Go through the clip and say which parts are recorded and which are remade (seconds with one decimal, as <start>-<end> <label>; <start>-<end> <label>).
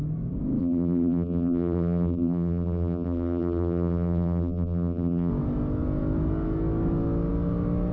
0.0-0.6 recorded; 0.6-5.3 remade; 5.3-7.9 recorded